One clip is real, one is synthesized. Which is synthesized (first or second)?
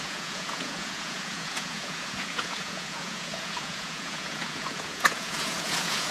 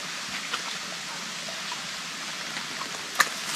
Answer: first